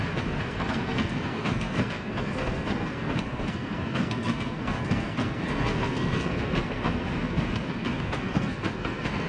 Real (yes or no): no